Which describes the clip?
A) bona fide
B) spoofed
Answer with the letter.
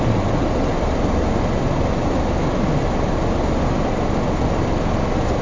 A